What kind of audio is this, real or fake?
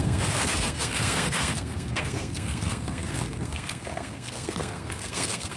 fake